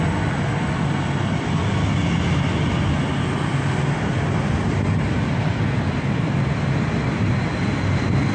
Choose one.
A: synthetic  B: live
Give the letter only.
B